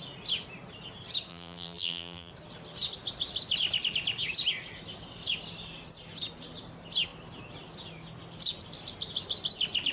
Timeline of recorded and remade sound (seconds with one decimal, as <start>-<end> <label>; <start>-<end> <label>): 0.0-1.3 recorded; 1.3-2.3 remade; 2.3-9.9 recorded

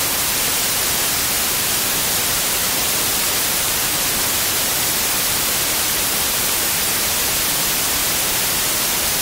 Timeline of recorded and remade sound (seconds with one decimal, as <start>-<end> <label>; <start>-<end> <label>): 0.0-2.6 recorded; 2.6-3.7 remade; 3.7-8.0 recorded; 8.0-9.2 remade

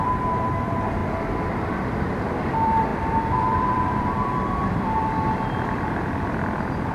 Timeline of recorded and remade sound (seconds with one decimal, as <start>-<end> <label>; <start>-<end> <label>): 0.0-6.9 remade

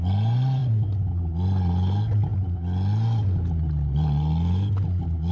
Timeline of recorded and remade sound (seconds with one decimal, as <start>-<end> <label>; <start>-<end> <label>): 0.0-5.3 recorded

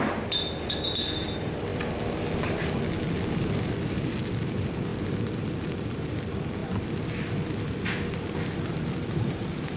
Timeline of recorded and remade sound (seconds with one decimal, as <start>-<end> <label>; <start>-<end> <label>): 0.0-6.6 remade; 6.6-8.9 recorded; 8.9-9.8 remade

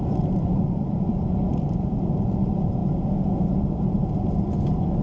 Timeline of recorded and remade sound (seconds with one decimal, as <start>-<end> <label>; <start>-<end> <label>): 0.0-2.8 remade; 2.8-5.0 recorded

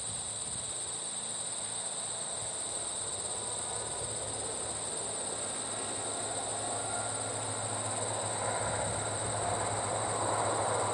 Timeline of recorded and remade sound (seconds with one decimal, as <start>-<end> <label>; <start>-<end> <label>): 0.0-10.9 recorded